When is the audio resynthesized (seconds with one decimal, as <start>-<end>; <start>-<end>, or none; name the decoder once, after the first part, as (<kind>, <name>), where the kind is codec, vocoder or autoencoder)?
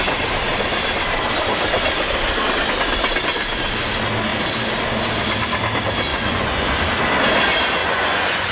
6.1-6.8 (vocoder, Vocos); 7.8-8.5